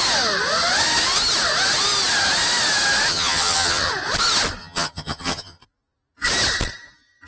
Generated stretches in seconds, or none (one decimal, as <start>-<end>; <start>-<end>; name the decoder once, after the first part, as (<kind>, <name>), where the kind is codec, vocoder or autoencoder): 3.1-3.9 (vocoder, HiFi-GAN); 4.6-5.6